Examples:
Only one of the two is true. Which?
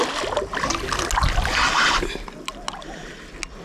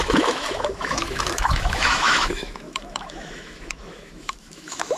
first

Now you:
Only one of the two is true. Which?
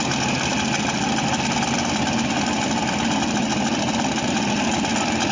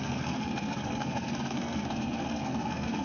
first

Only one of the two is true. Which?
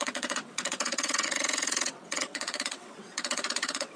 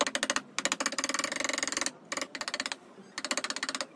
second